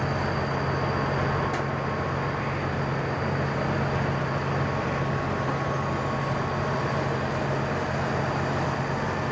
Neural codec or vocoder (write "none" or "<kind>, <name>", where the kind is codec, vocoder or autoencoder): none